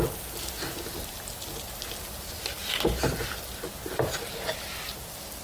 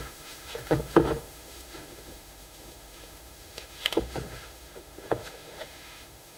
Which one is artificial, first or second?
second